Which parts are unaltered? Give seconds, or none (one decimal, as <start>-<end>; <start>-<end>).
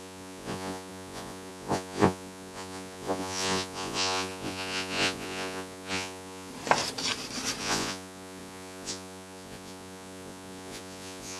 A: 6.5-7.6